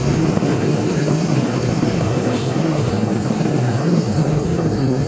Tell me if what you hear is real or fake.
fake